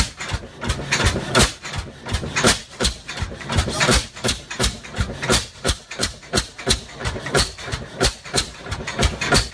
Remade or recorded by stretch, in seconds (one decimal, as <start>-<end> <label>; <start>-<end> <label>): 0.0-2.6 recorded; 2.6-6.6 remade; 6.6-7.0 recorded; 7.0-9.5 remade